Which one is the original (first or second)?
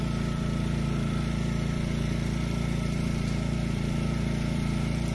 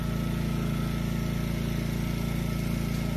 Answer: second